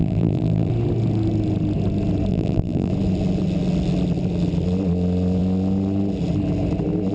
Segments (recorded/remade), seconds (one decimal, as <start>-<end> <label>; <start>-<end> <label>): 0.0-0.7 remade; 0.7-2.3 recorded; 2.3-2.9 remade; 2.9-7.1 recorded